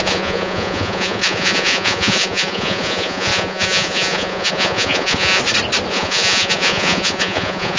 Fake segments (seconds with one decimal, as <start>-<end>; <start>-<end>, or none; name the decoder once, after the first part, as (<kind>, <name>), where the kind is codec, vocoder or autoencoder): 0.0-5.4 (vocoder, Vocos); 5.9-7.8